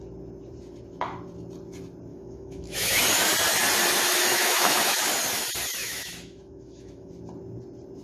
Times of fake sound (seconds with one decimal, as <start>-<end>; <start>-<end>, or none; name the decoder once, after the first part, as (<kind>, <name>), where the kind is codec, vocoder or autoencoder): 2.1-3.0 (autoencoder, DAC-VAE); 4.3-5.0; 5.8-7.1